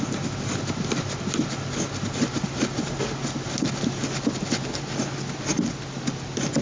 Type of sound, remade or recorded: recorded